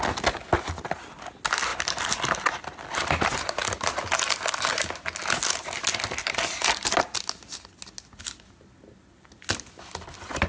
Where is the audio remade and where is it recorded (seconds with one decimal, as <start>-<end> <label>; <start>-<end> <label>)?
0.0-10.5 recorded